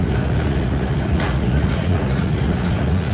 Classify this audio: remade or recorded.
remade